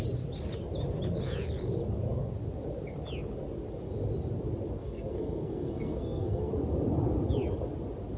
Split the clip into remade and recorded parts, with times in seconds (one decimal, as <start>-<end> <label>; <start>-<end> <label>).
0.0-4.8 recorded; 4.8-6.5 remade; 6.5-8.2 recorded